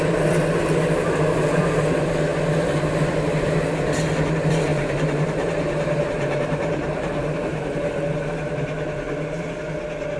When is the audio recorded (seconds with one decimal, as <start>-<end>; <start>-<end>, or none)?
0.0-4.7; 9.4-10.2